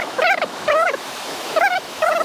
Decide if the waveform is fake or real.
fake